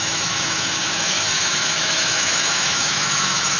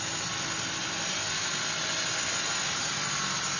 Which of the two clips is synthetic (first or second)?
first